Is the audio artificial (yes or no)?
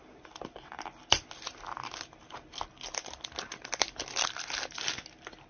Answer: no